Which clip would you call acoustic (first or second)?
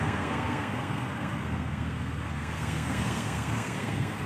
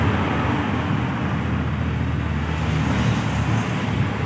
second